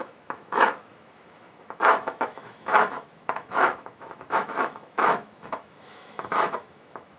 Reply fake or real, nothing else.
fake